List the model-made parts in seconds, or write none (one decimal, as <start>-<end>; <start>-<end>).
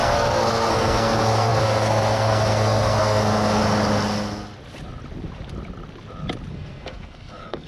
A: 0.0-3.6; 6.5-7.7